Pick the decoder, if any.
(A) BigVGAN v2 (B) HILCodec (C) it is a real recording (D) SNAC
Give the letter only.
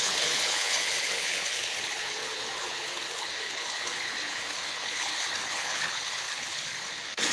B